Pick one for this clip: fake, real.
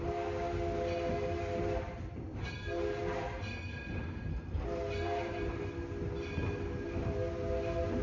real